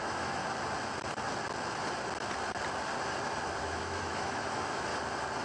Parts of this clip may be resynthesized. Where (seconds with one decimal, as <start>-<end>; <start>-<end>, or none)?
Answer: 0.0-0.4; 3.6-4.9